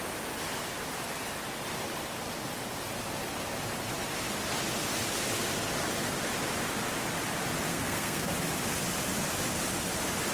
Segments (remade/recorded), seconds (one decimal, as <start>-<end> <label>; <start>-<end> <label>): 0.0-7.7 recorded; 7.7-8.3 remade; 8.3-10.3 recorded